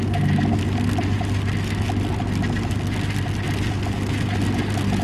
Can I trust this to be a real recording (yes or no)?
yes